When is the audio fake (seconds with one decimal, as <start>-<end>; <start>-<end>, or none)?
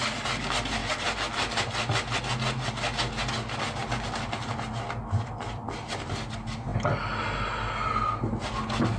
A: none